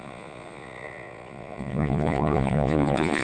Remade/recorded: remade